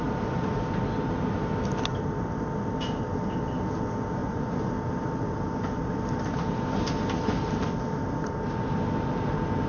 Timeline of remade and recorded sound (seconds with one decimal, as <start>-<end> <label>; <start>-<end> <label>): 0.0-4.2 recorded; 4.2-4.7 remade; 4.7-9.7 recorded